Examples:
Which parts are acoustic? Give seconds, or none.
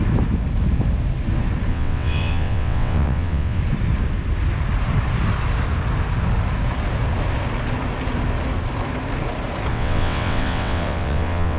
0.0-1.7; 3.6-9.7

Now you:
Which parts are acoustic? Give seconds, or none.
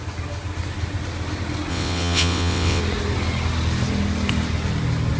0.0-1.7; 2.8-5.2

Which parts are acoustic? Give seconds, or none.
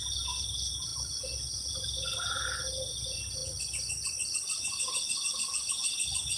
0.0-6.4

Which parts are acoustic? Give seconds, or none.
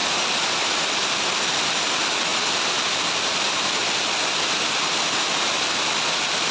0.0-6.5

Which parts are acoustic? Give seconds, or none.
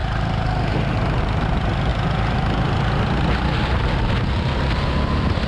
0.0-5.5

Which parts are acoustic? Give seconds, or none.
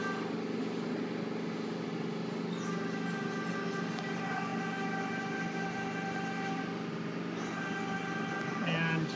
0.0-9.2